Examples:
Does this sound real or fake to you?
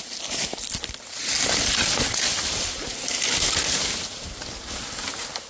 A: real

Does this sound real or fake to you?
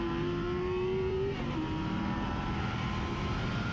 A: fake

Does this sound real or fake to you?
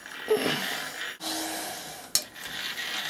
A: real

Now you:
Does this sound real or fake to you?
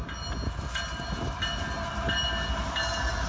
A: real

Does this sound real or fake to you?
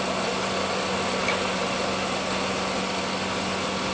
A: real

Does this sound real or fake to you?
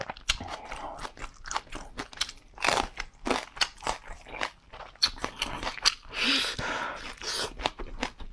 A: real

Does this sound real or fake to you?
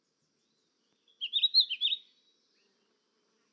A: fake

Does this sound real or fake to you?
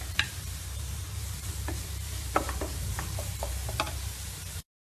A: fake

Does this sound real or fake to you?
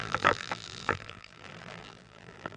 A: fake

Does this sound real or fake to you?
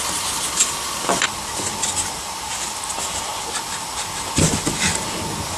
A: real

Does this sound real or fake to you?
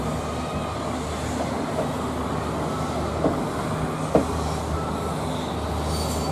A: real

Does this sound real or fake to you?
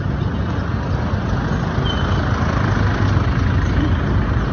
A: real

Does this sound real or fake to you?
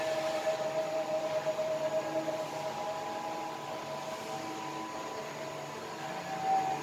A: real